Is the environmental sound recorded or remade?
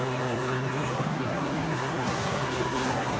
remade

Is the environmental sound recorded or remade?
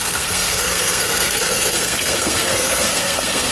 remade